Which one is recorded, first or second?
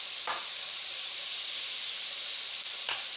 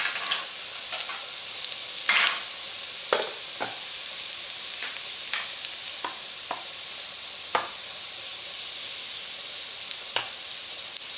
second